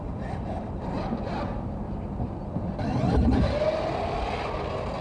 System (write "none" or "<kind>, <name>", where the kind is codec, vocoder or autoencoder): none